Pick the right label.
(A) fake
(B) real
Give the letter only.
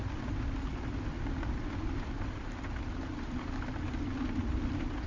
B